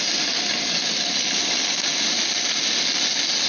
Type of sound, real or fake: real